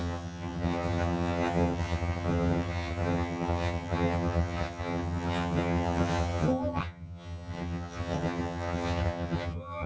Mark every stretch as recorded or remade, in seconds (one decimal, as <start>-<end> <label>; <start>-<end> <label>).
0.0-9.9 remade